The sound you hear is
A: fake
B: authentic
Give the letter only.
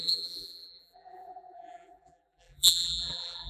A